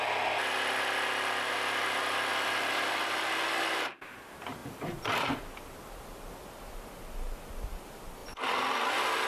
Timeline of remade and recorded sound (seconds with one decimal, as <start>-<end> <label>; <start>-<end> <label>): 0.0-2.3 recorded; 2.3-3.0 remade; 3.0-4.6 recorded; 4.6-5.4 remade; 5.4-9.3 recorded